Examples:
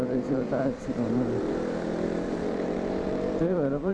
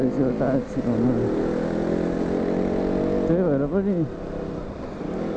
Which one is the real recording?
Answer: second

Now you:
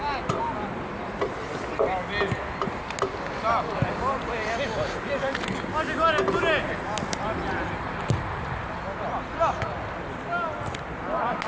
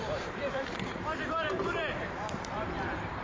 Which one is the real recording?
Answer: first